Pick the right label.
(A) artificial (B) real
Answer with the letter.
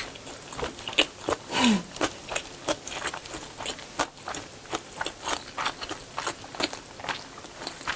B